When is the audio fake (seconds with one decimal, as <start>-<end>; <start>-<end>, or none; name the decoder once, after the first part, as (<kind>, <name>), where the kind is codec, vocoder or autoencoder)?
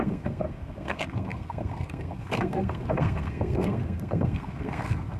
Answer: 0.0-5.2 (codec, SNAC)